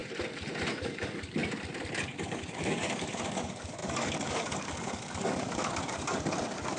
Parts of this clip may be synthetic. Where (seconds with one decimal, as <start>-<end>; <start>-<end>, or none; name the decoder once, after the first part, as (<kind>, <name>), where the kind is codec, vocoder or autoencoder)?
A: 0.7-1.4 (codec, DAC); 2.0-6.8